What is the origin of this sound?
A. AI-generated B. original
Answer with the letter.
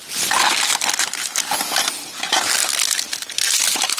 B